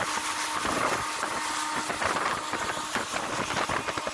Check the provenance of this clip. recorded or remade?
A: recorded